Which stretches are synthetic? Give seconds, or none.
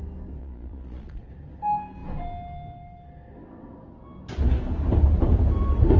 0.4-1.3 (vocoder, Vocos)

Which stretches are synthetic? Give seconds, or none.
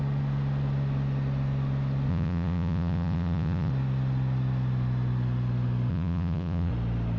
2.1-3.7 (vocoder, Vocos); 5.9-6.7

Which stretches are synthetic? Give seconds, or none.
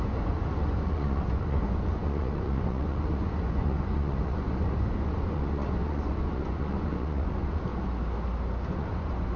0.0-7.7 (vocoder, Vocos); 8.7-9.4